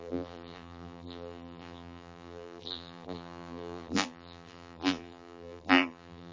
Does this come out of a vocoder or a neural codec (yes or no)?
yes